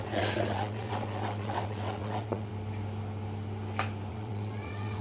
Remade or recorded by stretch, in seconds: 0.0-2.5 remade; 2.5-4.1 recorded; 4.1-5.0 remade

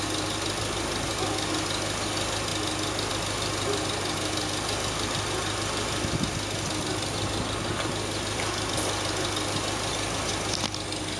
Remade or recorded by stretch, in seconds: 0.0-11.2 recorded

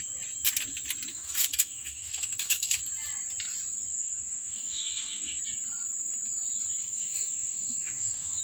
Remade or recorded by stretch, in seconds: 0.0-1.1 recorded; 1.1-2.8 remade; 2.8-3.9 recorded; 3.9-5.4 remade; 5.4-6.8 recorded; 6.8-8.4 remade

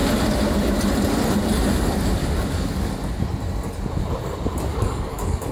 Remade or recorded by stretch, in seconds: 0.0-2.2 recorded; 2.2-2.9 remade; 2.9-4.7 recorded; 4.7-5.5 remade

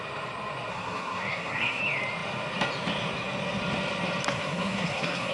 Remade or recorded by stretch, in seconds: 0.0-0.7 recorded; 0.7-1.8 remade; 1.8-4.3 recorded; 4.3-5.3 remade

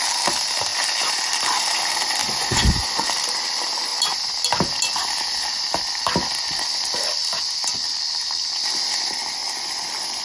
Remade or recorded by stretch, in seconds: 0.0-2.2 recorded; 2.2-3.1 remade; 3.1-10.2 recorded

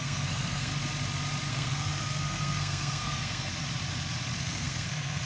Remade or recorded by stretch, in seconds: 0.0-0.7 remade; 0.7-1.5 recorded; 1.5-3.5 remade; 3.5-4.4 recorded; 4.4-5.3 remade

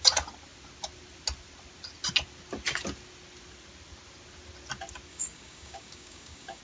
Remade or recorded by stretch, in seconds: 0.0-5.1 recorded; 5.1-6.6 remade